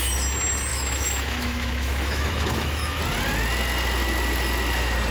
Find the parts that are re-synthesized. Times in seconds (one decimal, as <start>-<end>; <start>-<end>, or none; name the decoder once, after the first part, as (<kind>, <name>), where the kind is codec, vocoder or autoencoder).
0.7-3.0 (autoencoder, DAC-VAE)